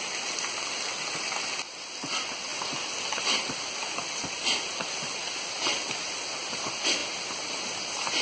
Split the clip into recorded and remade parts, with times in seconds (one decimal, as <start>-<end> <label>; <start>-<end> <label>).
0.0-8.2 recorded